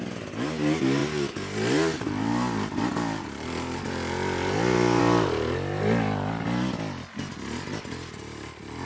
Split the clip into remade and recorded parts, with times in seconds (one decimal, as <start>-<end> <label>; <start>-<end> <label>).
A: 0.0-8.9 recorded